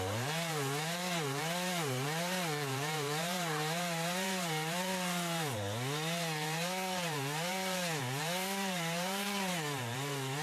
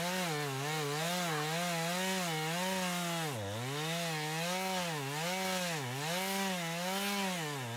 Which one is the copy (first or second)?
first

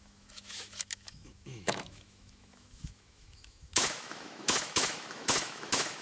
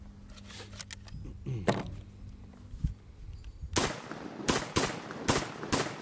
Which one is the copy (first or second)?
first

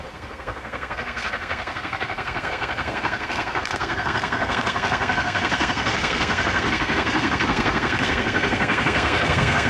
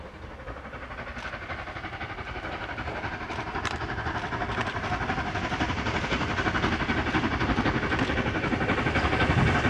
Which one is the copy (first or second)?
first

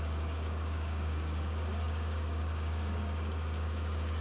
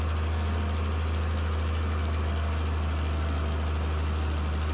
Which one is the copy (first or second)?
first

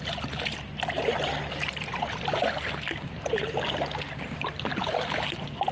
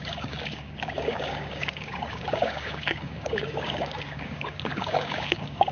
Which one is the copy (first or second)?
second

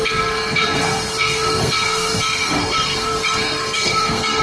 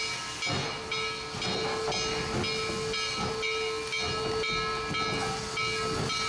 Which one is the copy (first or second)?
first